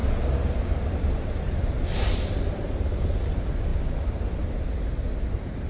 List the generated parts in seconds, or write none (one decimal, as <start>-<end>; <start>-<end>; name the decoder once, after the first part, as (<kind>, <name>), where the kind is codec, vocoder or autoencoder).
none

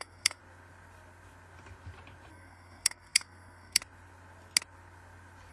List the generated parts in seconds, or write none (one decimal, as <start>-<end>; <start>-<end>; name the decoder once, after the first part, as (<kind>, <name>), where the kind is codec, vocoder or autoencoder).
0.0-0.4 (codec, SNAC); 2.3-3.8

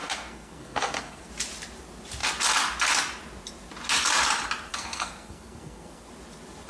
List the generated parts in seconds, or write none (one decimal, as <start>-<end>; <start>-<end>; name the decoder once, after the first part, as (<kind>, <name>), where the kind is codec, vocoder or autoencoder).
0.0-1.3 (codec, SNAC); 4.7-6.1

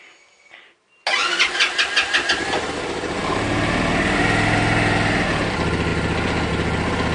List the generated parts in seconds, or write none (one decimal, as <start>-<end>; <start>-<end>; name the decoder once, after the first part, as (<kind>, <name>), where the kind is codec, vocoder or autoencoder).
none

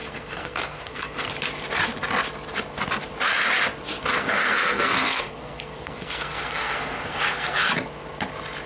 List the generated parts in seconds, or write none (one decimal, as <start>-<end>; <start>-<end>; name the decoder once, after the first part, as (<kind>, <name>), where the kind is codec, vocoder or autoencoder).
0.0-1.3 (codec, SNAC); 4.1-7.7